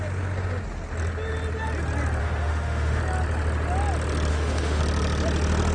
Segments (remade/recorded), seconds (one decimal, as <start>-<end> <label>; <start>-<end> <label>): 0.0-2.2 recorded; 2.2-3.0 remade; 3.0-4.3 recorded; 4.3-4.8 remade; 4.8-5.7 recorded